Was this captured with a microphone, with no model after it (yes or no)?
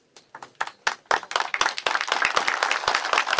yes